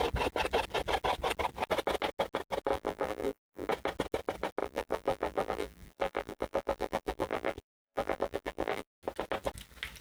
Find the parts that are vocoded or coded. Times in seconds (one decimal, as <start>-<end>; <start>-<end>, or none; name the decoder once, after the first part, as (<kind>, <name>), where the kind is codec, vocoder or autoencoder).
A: 2.7-3.7 (vocoder, BigVGAN v2); 4.6-8.9